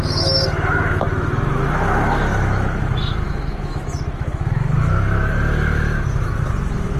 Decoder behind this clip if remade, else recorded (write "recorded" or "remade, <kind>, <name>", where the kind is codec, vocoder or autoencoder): remade, autoencoder, DAC-VAE